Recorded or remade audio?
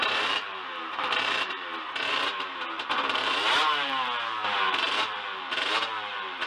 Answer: remade